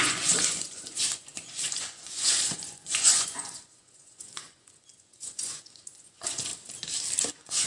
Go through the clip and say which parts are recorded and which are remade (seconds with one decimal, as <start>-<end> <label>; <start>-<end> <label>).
0.0-6.5 remade; 6.5-7.3 recorded; 7.3-7.7 remade